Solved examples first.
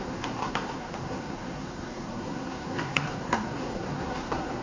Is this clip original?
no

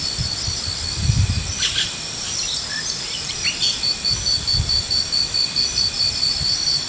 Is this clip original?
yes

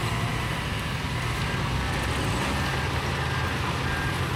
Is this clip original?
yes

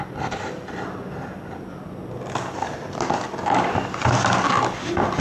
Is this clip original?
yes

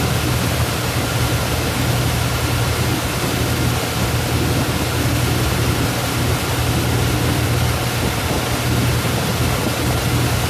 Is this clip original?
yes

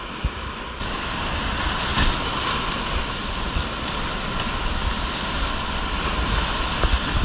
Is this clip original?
yes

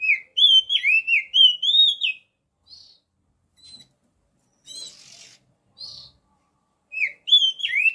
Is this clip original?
yes